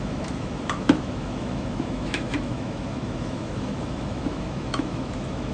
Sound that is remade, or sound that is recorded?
remade